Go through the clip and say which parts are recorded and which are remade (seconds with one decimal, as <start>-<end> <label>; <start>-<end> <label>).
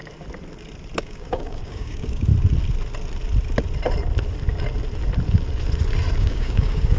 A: 0.0-1.0 recorded; 1.0-2.3 remade; 2.3-6.2 recorded; 6.2-7.0 remade